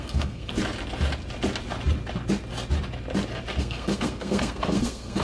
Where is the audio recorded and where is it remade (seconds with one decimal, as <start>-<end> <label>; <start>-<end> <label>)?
0.0-0.5 remade; 0.5-3.6 recorded; 3.6-5.2 remade